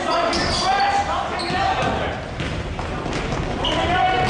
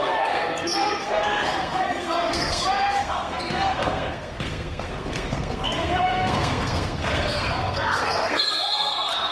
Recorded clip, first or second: first